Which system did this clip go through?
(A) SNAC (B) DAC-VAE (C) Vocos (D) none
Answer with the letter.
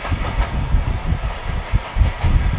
D